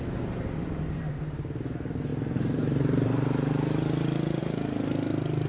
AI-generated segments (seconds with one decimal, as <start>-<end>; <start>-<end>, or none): 2.1-4.4